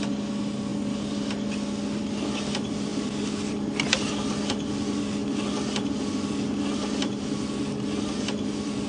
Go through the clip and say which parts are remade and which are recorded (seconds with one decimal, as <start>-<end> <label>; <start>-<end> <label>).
0.0-8.9 recorded